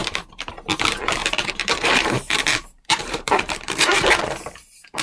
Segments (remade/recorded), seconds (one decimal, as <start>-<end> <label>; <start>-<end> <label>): 0.0-0.5 remade; 0.5-1.2 recorded; 1.2-4.2 remade; 4.2-5.0 recorded